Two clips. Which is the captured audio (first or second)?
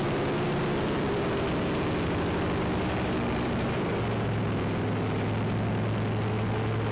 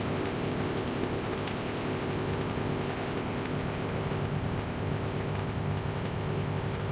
first